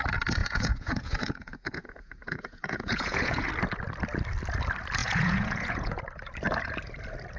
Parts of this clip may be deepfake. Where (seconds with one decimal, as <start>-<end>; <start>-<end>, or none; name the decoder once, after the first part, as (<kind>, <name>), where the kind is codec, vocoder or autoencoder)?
0.4-3.5 (vocoder, Vocos); 5.0-6.0